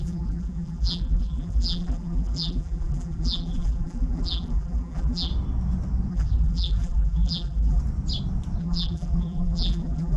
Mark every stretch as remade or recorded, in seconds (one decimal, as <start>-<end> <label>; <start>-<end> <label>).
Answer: 0.0-5.3 remade; 5.3-6.1 recorded; 6.1-7.8 remade; 7.8-8.6 recorded; 8.6-10.2 remade